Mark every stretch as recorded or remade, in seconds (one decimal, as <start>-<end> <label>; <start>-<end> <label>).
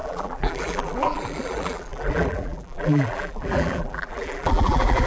0.0-5.1 remade